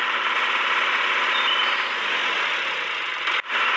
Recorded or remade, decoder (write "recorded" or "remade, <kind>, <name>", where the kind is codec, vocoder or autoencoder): recorded